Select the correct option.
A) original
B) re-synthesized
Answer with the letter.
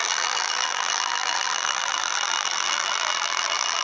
B